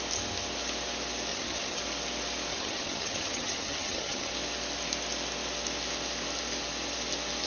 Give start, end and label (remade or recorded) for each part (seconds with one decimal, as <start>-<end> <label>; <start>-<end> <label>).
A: 0.0-1.3 recorded; 1.3-1.8 remade; 1.8-2.5 recorded; 2.5-4.3 remade; 4.3-7.5 recorded